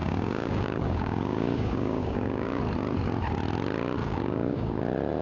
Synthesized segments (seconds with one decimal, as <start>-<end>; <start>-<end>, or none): 0.0-2.6; 4.0-4.8